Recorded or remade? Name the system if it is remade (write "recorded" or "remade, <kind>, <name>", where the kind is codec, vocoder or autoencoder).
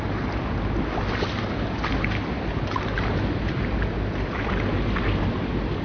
recorded